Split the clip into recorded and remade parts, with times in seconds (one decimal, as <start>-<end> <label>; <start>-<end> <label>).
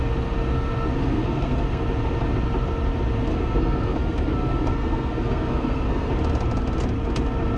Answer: 0.0-1.0 recorded; 1.0-1.8 remade; 1.8-3.3 recorded; 3.3-6.1 remade; 6.1-7.6 recorded